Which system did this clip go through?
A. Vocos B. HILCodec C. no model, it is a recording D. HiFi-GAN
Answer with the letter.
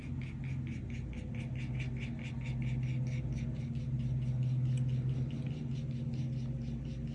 C